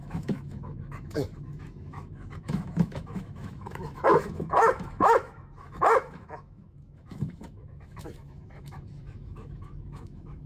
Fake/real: fake